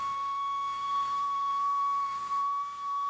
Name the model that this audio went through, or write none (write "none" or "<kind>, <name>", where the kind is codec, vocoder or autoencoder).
autoencoder, DAC-VAE